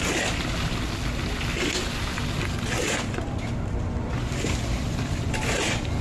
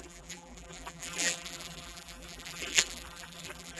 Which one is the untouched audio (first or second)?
first